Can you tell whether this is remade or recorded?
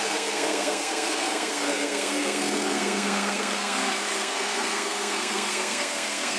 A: remade